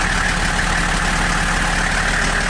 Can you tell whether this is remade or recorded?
recorded